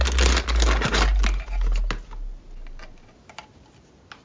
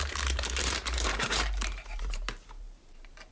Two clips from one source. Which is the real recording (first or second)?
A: first